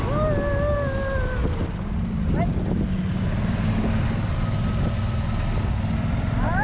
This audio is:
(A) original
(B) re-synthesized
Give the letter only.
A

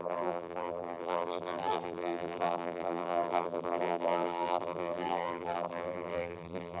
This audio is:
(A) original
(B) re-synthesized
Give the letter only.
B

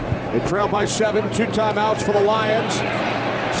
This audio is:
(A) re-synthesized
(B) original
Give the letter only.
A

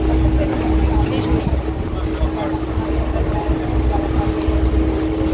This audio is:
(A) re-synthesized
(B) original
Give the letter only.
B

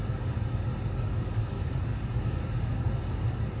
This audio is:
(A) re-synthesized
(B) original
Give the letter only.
A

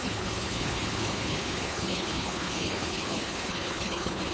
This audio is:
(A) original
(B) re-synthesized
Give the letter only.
B